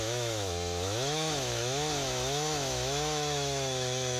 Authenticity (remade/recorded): remade